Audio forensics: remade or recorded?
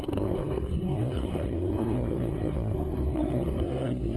remade